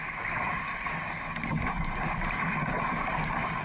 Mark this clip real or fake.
fake